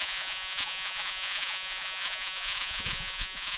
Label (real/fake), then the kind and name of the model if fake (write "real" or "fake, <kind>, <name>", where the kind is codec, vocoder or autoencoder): fake, vocoder, Vocos